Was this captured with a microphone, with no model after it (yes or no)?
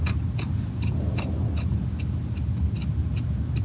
yes